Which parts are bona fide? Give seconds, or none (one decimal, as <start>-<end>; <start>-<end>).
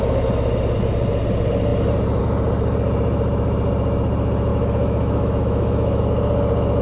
0.0-4.5; 6.0-6.8